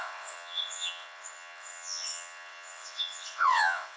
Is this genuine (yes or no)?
no